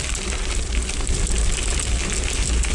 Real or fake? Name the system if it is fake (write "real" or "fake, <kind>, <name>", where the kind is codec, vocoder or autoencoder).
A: real